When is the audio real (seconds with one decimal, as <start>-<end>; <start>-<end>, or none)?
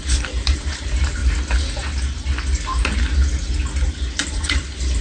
1.2-4.2